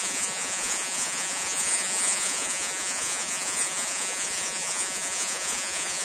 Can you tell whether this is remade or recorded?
remade